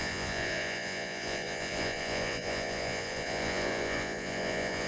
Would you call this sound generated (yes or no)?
yes